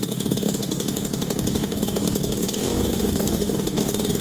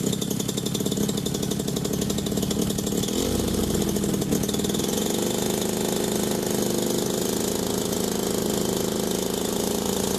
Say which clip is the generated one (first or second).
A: first